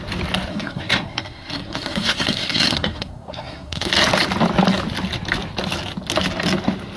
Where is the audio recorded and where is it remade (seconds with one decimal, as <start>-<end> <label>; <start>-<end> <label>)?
0.0-0.5 recorded; 0.5-3.9 remade; 3.9-7.0 recorded